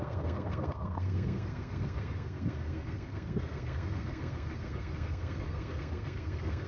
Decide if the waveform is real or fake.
fake